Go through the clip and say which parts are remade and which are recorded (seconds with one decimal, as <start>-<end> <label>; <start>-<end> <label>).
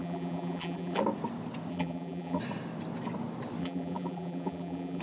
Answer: 0.0-1.0 remade; 1.0-1.7 recorded; 1.7-2.4 remade; 2.4-3.6 recorded; 3.6-5.0 remade